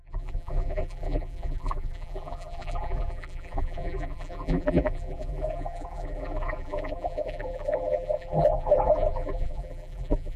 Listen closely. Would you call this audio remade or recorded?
remade